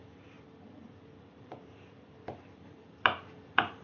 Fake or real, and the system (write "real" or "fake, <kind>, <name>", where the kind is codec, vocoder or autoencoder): fake, vocoder, BigVGAN v2